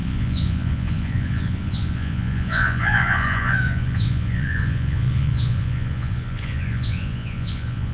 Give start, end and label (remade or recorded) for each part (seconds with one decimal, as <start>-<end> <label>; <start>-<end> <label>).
0.0-7.9 remade